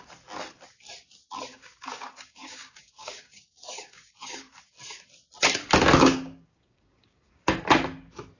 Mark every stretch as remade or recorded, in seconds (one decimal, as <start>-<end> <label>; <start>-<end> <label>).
0.0-1.5 recorded; 1.5-4.4 remade; 4.4-6.0 recorded; 6.0-7.6 remade; 7.6-8.4 recorded